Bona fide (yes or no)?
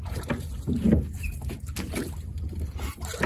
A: no